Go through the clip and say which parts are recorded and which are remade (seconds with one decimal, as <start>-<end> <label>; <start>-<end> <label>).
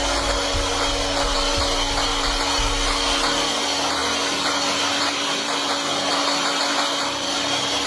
0.0-7.9 recorded